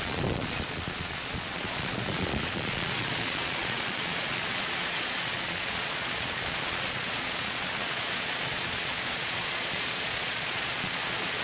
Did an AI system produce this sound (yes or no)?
yes